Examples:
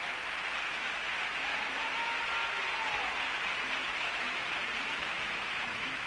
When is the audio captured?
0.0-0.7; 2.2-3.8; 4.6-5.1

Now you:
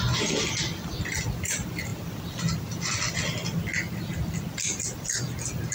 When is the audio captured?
0.0-5.7

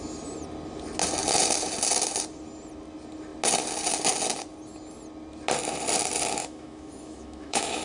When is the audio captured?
0.0-6.4

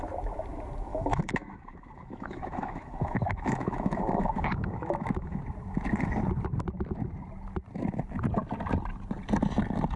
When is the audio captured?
0.0-0.9; 5.4-10.0

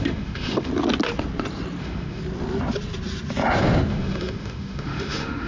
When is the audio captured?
0.7-1.8; 2.2-3.9